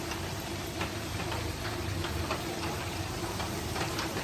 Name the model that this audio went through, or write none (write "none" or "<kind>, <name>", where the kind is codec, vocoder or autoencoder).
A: vocoder, BigVGAN v2